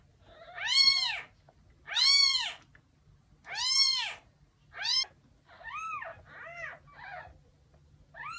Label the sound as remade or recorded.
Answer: recorded